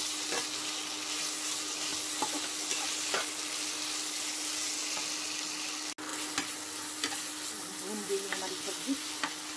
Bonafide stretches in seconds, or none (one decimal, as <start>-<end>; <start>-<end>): 0.0-9.6